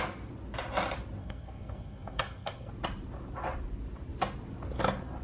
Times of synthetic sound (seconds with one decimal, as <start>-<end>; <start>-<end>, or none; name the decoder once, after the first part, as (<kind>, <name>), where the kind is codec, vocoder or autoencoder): 1.2-2.7 (codec, SNAC)